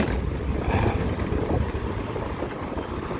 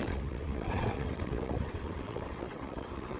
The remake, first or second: second